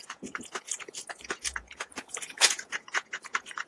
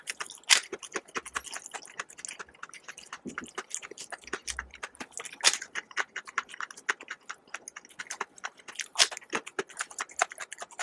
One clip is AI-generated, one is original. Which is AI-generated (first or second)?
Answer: first